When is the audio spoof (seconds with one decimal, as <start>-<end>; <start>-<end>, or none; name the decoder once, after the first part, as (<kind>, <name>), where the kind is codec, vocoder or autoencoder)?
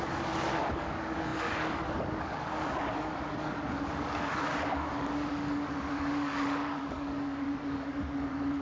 0.0-8.6 (codec, DAC)